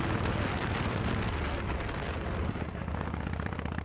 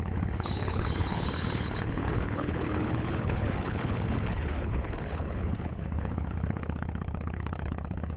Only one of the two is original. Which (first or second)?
first